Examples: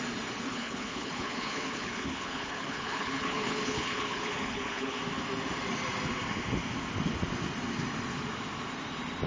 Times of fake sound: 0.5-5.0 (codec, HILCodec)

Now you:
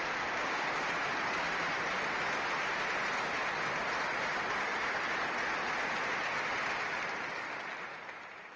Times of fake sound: none

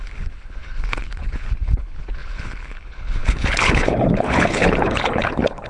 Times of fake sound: 0.0-5.7 (codec, HILCodec)

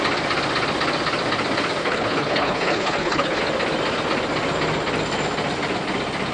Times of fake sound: 1.8-3.4 (codec, HILCodec)

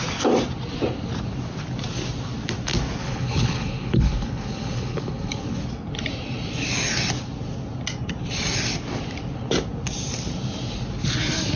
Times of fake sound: 3.0-5.6 (codec, HILCodec)

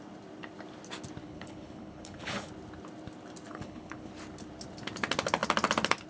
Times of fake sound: 1.2-2.5 (codec, HILCodec); 3.5-4.1

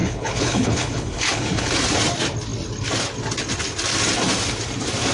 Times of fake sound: 0.0-1.7 (codec, HILCodec)

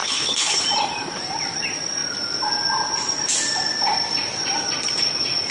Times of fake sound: 0.0-0.6 (codec, HILCodec)